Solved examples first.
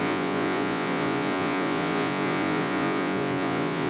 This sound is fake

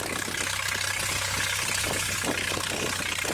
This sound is real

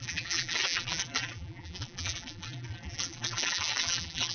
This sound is fake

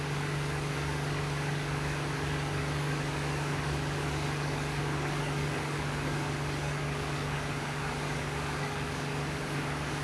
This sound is fake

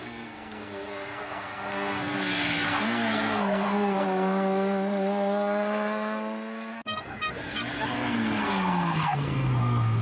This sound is fake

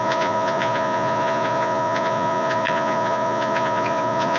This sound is fake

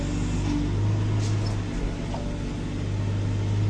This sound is real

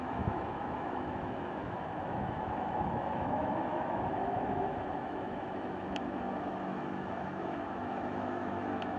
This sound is fake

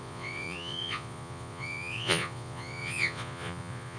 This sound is fake